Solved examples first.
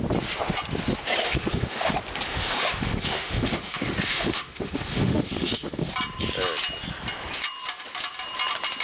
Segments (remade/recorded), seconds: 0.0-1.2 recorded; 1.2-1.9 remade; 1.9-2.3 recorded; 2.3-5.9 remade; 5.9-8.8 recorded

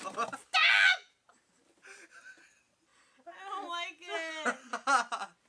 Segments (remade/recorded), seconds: 0.0-5.5 recorded

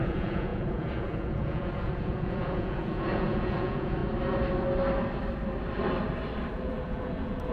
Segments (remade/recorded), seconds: 0.0-4.0 remade; 4.0-6.5 recorded; 6.5-7.5 remade

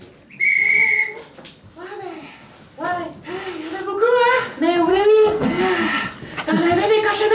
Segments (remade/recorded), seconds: 0.0-4.9 recorded; 4.9-5.6 remade; 5.6-7.3 recorded